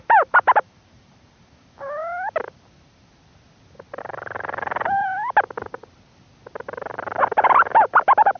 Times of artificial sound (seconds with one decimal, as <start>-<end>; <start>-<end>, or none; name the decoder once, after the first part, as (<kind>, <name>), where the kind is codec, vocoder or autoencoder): 0.0-2.0 (vocoder, BigVGAN v2); 4.0-5.1; 7.2-8.4